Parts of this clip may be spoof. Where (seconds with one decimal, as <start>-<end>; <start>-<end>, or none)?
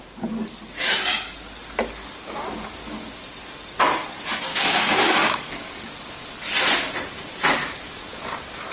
4.5-5.9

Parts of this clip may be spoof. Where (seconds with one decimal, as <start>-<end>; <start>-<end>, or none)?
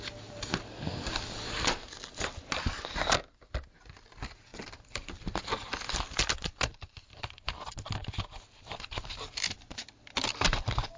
6.7-7.5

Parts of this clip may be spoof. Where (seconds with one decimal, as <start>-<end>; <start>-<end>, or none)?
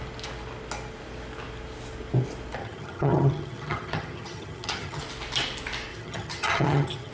2.6-5.0; 5.9-7.1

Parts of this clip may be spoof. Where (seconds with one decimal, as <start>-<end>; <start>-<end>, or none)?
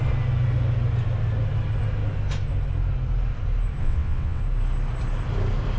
3.8-4.4